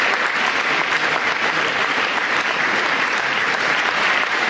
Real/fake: fake